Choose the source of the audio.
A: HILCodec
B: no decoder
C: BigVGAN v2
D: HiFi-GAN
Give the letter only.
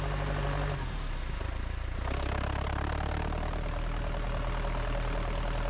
B